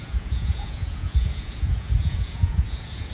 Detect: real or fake fake